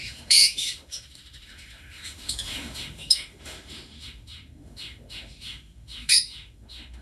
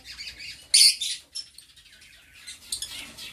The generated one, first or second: first